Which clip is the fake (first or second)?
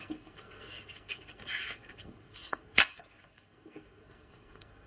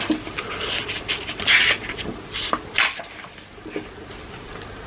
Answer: first